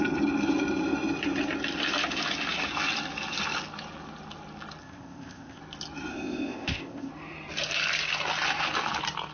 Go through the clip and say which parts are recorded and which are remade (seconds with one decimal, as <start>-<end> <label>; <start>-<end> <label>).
0.0-4.8 recorded; 4.8-5.6 remade; 5.6-6.1 recorded; 6.1-7.1 remade; 7.1-9.3 recorded